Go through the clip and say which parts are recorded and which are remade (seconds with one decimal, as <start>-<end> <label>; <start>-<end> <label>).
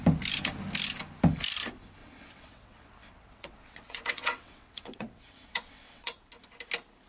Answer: 0.0-2.0 recorded; 2.0-6.3 remade; 6.3-7.1 recorded